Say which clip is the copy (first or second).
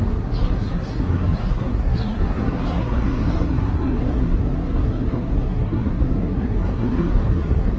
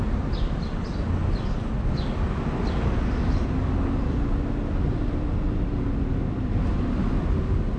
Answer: first